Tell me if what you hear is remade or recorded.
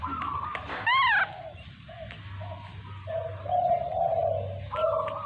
recorded